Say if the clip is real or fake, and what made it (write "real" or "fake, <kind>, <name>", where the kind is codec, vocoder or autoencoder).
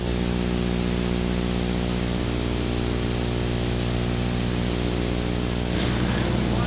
real